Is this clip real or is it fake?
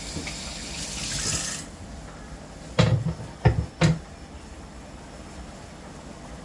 real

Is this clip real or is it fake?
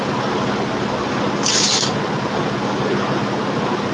real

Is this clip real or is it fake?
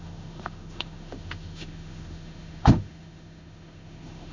fake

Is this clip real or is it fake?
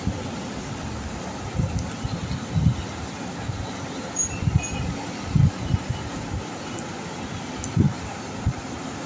real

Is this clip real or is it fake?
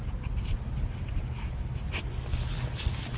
real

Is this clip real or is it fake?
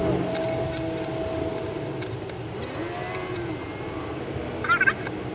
real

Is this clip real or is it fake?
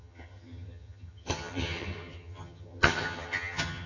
fake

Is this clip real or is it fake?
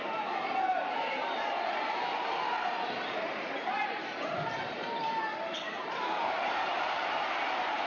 fake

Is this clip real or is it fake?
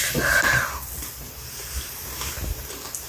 real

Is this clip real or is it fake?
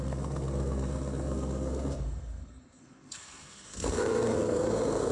fake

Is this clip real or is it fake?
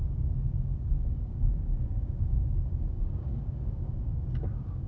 fake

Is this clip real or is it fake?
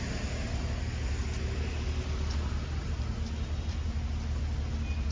real